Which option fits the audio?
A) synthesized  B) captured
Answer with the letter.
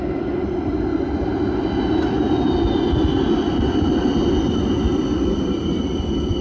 B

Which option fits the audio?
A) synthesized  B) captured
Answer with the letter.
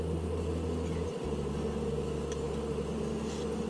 B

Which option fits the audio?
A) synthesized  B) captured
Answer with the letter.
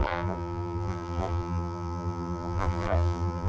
A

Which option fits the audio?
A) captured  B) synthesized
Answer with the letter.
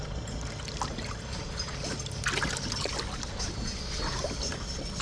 A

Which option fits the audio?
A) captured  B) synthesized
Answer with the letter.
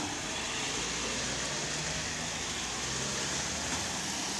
A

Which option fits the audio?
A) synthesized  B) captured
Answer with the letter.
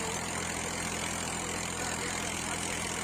B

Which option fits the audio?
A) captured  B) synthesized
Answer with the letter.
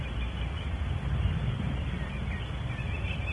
B